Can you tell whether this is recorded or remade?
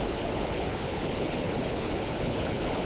remade